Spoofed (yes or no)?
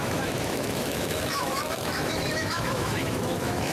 yes